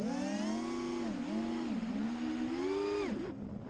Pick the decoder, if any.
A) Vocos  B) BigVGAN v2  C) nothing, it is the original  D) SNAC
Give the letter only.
C